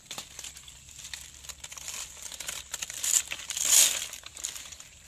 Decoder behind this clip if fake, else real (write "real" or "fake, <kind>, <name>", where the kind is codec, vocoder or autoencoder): fake, vocoder, BigVGAN v2